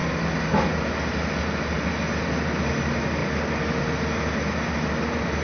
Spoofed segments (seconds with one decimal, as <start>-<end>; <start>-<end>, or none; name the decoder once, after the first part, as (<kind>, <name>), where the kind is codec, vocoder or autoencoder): none